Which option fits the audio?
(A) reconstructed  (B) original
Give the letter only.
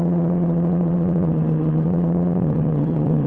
A